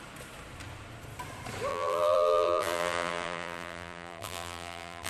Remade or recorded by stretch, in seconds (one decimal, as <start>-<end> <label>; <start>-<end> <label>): 0.0-1.7 recorded; 1.7-5.1 remade